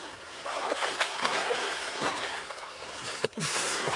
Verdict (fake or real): fake